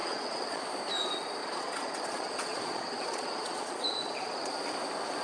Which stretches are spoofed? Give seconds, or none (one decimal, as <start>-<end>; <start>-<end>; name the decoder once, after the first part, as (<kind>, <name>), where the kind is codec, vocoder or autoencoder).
0.0-0.6 (vocoder, Vocos); 1.4-4.5